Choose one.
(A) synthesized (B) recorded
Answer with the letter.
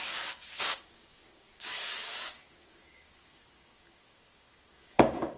A